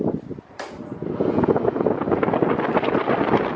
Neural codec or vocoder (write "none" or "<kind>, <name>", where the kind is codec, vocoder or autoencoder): none